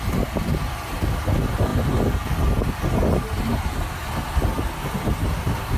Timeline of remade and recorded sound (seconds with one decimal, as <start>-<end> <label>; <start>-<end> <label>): 0.0-5.8 recorded